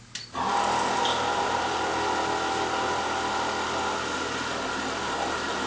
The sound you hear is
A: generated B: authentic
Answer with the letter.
B